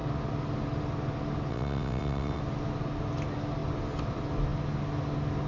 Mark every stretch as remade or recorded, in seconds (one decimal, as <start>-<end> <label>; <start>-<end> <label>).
0.0-1.5 recorded; 1.5-2.4 remade; 2.4-5.5 recorded

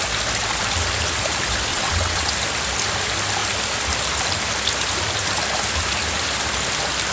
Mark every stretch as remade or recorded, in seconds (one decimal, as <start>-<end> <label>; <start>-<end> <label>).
0.0-1.7 recorded; 1.7-2.3 remade; 2.3-7.1 recorded

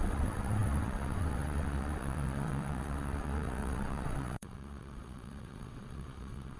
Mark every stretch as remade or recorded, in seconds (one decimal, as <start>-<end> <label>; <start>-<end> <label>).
0.0-6.6 remade

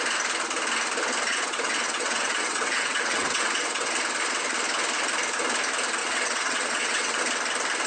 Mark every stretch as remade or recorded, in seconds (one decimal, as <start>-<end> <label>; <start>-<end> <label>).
0.0-1.3 recorded; 1.3-3.9 remade; 3.9-6.0 recorded; 6.0-7.2 remade; 7.2-7.9 recorded

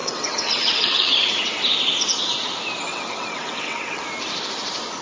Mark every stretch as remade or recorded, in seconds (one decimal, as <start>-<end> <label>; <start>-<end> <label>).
0.0-1.4 remade; 1.4-2.9 recorded; 2.9-4.0 remade; 4.0-5.0 recorded